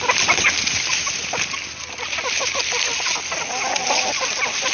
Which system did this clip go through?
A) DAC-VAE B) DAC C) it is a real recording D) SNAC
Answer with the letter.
C